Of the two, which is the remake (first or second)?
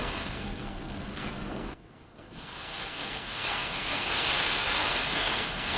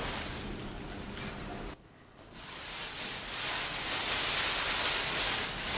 first